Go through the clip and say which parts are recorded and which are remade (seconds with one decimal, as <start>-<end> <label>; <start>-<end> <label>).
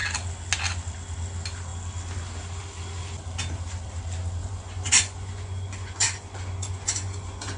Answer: 0.0-4.4 recorded; 4.4-7.6 remade